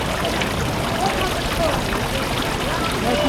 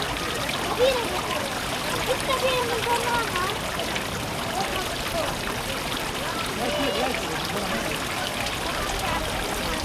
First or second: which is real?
first